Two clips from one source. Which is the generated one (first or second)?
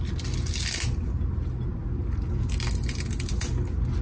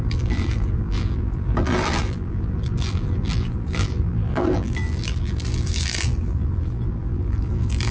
second